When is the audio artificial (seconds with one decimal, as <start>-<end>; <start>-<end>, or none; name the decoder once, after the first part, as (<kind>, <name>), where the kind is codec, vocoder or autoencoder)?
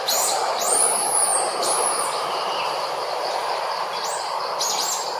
1.3-4.4 (vocoder, BigVGAN v2)